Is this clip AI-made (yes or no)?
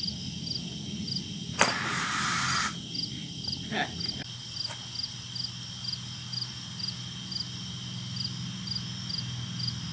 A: no